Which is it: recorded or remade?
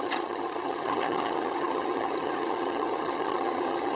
remade